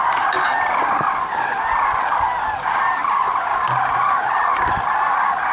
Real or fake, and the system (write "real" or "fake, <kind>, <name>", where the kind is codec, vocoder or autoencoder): real